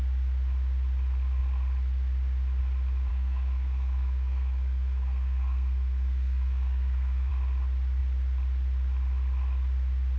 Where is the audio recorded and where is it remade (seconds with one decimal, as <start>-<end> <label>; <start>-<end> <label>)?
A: 0.0-3.1 recorded; 3.1-7.3 remade; 7.3-10.2 recorded